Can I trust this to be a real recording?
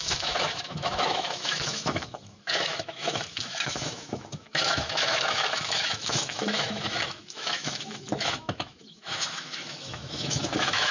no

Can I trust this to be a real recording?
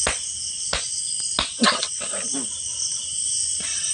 yes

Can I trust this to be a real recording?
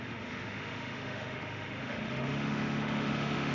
no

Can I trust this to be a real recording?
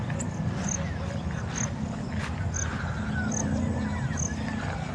yes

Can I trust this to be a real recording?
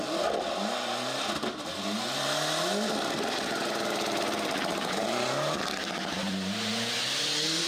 yes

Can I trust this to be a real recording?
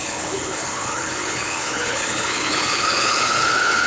no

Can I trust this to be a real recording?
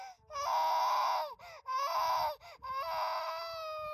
yes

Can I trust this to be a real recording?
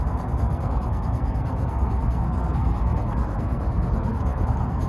no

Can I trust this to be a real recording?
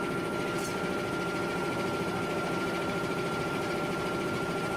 no